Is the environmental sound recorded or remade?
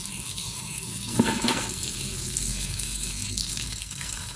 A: remade